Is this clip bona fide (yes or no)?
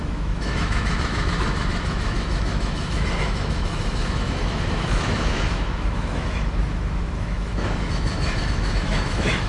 no